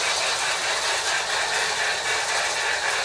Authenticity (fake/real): real